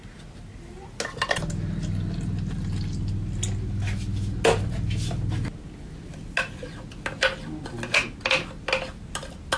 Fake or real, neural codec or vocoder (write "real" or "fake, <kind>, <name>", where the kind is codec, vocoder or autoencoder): real